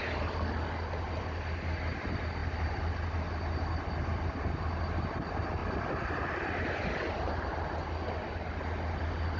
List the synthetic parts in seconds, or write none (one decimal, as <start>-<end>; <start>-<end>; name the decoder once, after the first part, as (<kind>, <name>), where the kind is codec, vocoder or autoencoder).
none